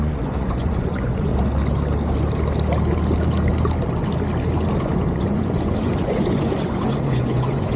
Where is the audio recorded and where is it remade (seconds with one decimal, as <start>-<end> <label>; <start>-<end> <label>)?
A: 0.0-1.3 remade; 1.3-4.8 recorded; 4.8-7.8 remade